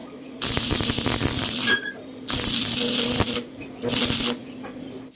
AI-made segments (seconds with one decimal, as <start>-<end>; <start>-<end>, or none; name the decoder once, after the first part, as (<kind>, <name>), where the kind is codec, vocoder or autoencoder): none